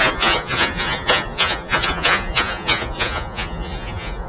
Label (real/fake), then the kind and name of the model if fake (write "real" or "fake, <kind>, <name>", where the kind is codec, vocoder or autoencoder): fake, vocoder, Vocos